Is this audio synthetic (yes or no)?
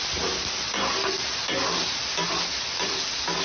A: no